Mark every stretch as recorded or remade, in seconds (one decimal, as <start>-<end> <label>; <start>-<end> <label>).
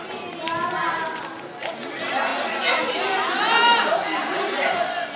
0.0-5.2 recorded